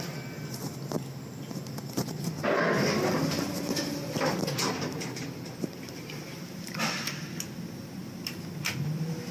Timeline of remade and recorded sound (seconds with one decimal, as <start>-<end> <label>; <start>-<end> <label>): 0.0-9.3 recorded